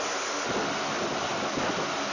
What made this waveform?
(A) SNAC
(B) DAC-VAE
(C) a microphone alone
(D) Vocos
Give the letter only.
C